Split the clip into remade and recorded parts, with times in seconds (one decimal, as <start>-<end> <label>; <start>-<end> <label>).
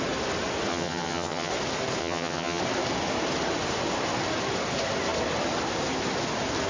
0.0-0.7 recorded; 0.7-1.5 remade; 1.5-2.0 recorded; 2.0-2.6 remade; 2.6-6.7 recorded